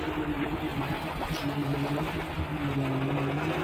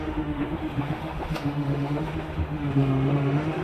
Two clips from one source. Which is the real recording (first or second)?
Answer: first